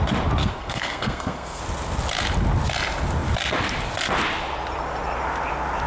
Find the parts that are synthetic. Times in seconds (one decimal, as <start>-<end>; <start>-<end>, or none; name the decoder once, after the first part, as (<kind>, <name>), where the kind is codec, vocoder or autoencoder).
0.4-1.6 (codec, SNAC)